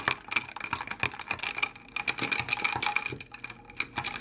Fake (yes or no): no